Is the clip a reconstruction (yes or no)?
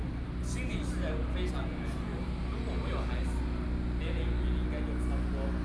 no